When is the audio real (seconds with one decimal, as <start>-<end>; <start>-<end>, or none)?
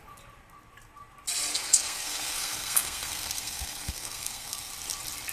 0.0-1.5; 4.7-5.3